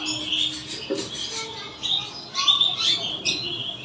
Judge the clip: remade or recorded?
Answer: recorded